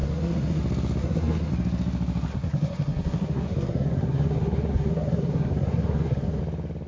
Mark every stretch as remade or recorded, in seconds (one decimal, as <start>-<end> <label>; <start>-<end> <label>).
0.0-0.6 remade; 0.6-1.0 recorded; 1.0-1.5 remade; 1.5-2.3 recorded; 2.3-6.4 remade; 6.4-6.9 recorded